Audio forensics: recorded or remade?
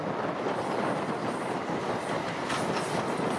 recorded